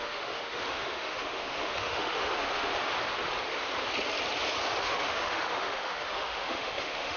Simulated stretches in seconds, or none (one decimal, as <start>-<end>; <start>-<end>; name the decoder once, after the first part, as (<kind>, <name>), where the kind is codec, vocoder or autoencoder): 0.0-2.7 (autoencoder, DAC-VAE); 4.8-7.2